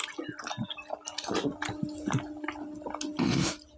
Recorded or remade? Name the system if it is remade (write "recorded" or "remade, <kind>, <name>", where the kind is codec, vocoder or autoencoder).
recorded